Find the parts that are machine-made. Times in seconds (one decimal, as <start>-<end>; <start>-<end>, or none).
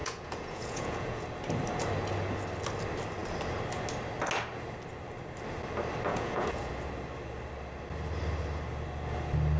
0.0-1.2; 6.1-6.7